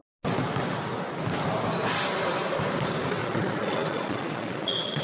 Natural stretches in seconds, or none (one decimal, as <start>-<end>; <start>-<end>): 0.0-3.2